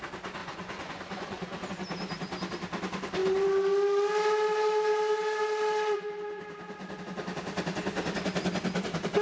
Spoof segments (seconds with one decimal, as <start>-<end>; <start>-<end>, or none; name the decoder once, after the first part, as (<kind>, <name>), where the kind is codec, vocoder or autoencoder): 0.4-1.7 (vocoder, Vocos)